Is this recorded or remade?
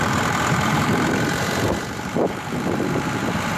remade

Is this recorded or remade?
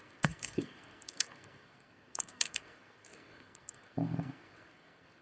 remade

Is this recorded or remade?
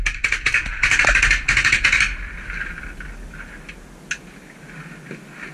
recorded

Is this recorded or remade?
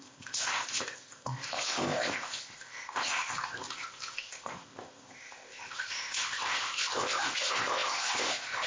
remade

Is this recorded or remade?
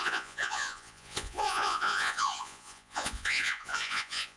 remade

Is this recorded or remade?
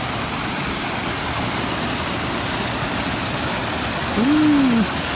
recorded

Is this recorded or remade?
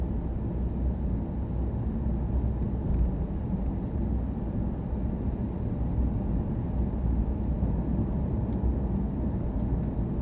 recorded